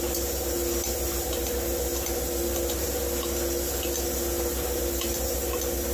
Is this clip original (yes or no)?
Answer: yes